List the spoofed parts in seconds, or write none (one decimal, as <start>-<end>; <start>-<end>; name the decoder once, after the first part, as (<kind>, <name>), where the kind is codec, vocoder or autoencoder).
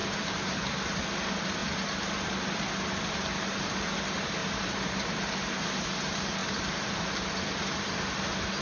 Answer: 0.0-0.6 (vocoder, BigVGAN v2); 4.4-5.1; 6.4-7.8